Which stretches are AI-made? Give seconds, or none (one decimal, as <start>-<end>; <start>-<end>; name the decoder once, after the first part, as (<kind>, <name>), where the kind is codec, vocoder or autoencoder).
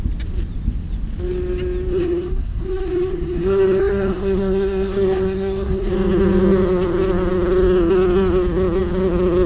1.9-5.9 (codec, SNAC)